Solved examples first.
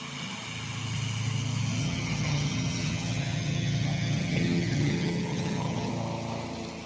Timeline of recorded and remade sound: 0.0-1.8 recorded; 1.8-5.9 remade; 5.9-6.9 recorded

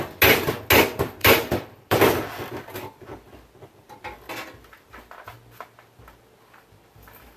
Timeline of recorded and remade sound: 0.0-1.2 recorded; 1.2-2.0 remade; 2.0-7.4 recorded

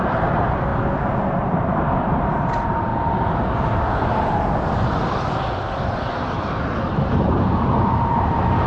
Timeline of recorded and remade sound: 0.0-0.7 remade; 0.7-1.2 recorded; 1.2-2.9 remade; 2.9-7.2 recorded; 7.2-8.7 remade

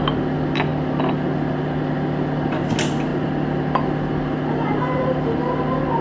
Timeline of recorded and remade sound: 0.0-6.0 recorded

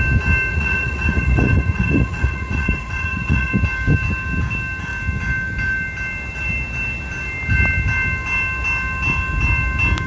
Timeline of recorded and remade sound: 0.0-0.5 recorded; 0.5-3.5 remade; 3.5-10.1 recorded